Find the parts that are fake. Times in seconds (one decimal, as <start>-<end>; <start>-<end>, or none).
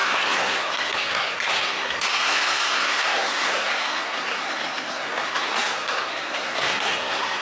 0.0-7.4